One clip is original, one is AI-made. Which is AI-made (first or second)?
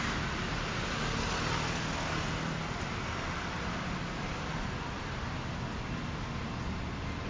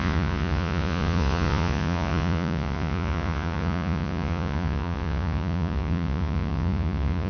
second